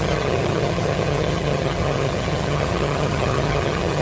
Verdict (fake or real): fake